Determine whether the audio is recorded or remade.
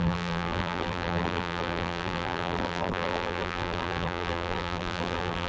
remade